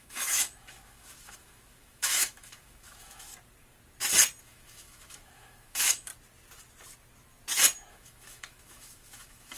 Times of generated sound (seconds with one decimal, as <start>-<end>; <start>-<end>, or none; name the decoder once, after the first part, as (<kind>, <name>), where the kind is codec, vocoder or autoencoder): 0.0-3.3 (autoencoder, DAC-VAE); 4.4-6.1; 7.9-9.6